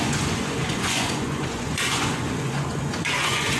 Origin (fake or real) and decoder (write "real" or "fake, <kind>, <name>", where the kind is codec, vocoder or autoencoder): fake, vocoder, Vocos